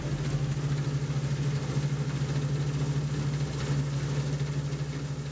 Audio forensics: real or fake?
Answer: real